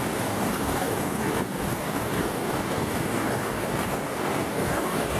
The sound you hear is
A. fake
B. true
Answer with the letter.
A